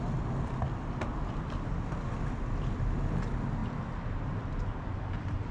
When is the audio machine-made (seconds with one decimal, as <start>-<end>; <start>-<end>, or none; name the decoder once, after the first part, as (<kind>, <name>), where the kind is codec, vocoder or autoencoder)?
none